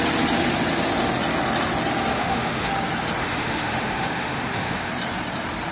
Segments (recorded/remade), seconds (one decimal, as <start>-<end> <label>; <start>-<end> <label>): 0.0-2.1 recorded; 2.1-2.7 remade; 2.7-3.2 recorded; 3.2-4.9 remade; 4.9-5.7 recorded